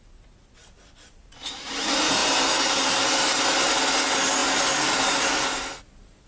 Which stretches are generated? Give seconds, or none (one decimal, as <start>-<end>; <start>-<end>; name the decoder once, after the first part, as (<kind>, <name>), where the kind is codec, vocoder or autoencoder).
none